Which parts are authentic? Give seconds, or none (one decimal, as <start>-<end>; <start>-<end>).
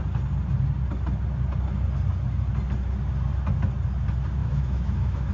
0.0-4.4